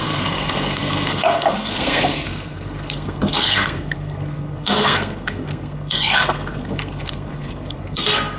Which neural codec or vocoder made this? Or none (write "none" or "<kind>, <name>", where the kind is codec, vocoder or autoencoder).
codec, SNAC